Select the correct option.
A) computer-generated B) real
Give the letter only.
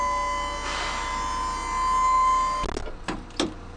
B